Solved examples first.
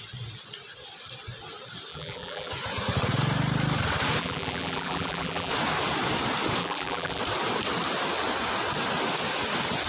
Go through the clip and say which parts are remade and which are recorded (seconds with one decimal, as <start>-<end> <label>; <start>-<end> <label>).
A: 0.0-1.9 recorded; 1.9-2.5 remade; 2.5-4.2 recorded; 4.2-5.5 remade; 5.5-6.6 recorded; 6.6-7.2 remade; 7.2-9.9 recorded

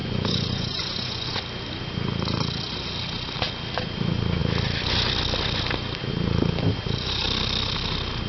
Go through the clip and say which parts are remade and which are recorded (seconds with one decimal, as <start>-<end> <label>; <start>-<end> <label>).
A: 0.0-1.4 remade; 1.4-8.3 recorded

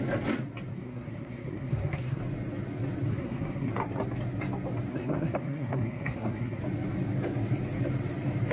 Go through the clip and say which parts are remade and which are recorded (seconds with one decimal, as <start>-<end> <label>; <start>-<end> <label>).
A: 0.0-0.7 recorded; 0.7-2.2 remade; 2.2-3.1 recorded; 3.1-3.7 remade; 3.7-4.9 recorded; 4.9-6.6 remade; 6.6-8.5 recorded

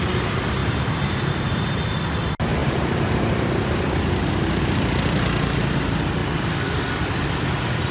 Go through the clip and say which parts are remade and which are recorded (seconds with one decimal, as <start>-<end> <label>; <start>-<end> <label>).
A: 0.0-0.6 recorded; 0.6-1.9 remade; 1.9-2.6 recorded; 2.6-4.6 remade; 4.6-7.9 recorded

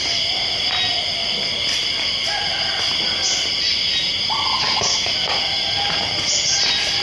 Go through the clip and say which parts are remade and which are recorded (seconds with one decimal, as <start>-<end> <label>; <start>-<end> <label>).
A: 0.0-7.0 recorded

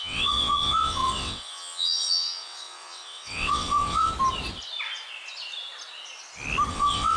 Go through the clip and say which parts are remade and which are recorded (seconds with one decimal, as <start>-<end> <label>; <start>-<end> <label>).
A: 0.0-4.1 remade; 4.1-6.7 recorded; 6.7-7.2 remade

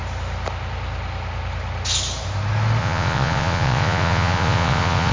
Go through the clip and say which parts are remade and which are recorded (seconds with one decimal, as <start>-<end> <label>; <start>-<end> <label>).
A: 0.0-2.8 recorded; 2.8-5.1 remade